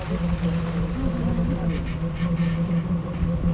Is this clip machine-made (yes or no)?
no